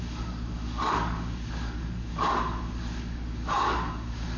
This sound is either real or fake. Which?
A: fake